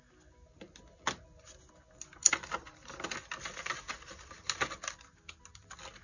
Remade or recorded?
recorded